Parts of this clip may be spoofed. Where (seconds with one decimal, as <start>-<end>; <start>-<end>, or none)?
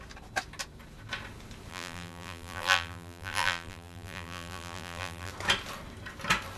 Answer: 1.7-5.3